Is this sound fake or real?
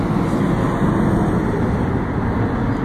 real